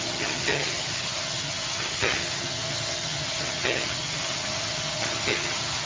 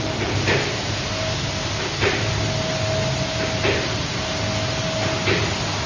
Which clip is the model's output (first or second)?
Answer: first